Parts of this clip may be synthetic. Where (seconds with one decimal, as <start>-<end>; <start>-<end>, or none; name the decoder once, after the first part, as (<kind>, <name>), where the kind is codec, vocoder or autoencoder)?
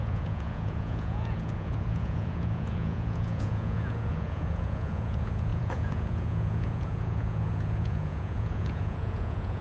0.0-9.6 (vocoder, Vocos)